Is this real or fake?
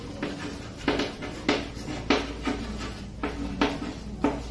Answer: real